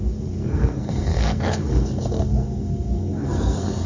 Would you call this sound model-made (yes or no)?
yes